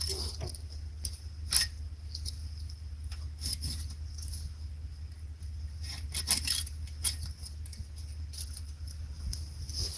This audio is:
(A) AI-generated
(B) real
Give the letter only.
B